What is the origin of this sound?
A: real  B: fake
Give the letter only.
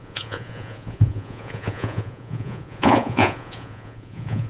B